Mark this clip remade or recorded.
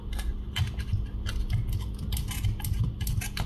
recorded